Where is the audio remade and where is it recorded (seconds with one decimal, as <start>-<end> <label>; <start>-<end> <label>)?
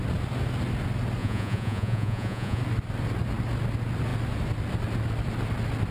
0.0-1.2 recorded; 1.2-2.6 remade; 2.6-5.9 recorded